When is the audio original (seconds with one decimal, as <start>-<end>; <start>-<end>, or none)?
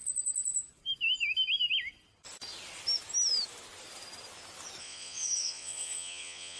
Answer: 0.0-4.8